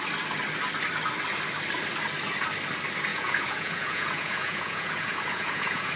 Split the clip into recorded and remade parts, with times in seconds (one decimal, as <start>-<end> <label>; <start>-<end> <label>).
0.0-3.1 recorded; 3.1-6.0 remade